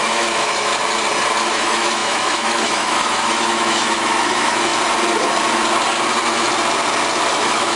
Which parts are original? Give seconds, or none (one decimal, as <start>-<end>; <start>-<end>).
0.7-1.5; 4.7-7.3